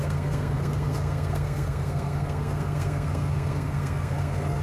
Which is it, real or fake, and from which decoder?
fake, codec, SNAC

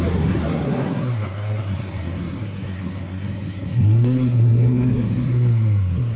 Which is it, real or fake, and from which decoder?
fake, codec, SNAC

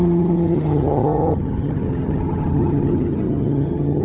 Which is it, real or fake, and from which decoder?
fake, vocoder, HiFi-GAN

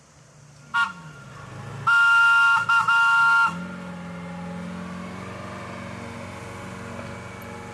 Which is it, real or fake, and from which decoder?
real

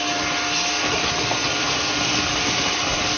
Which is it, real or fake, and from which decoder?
real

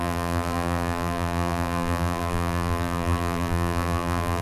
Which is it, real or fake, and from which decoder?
fake, vocoder, BigVGAN v2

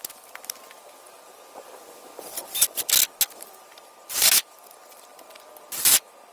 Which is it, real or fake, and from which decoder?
real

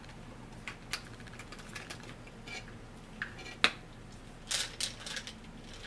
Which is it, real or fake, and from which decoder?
real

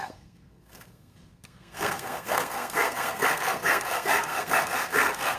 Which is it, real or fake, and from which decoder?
fake, codec, SNAC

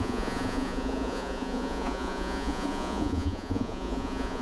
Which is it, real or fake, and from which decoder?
fake, vocoder, Vocos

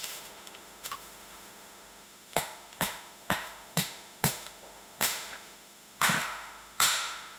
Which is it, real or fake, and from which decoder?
fake, autoencoder, DAC-VAE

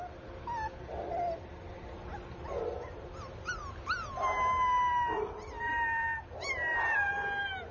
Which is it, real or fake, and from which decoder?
real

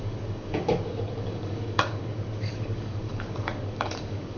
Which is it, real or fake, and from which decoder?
fake, codec, DAC